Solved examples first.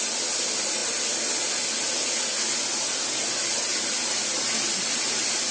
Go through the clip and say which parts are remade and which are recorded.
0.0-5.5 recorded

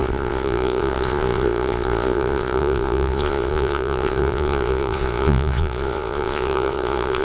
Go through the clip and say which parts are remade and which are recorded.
0.0-7.2 remade

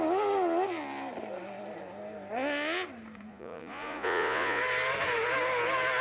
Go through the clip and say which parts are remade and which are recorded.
0.0-3.3 recorded; 3.3-4.6 remade; 4.6-6.0 recorded

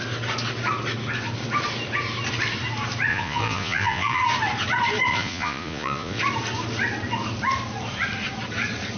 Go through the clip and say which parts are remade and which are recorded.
0.0-3.1 recorded; 3.1-4.2 remade; 4.2-5.1 recorded; 5.1-6.2 remade; 6.2-9.0 recorded

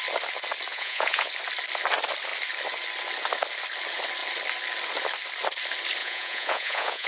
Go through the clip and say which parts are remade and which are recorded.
0.0-0.7 recorded; 0.7-1.3 remade; 1.3-6.0 recorded; 6.0-7.1 remade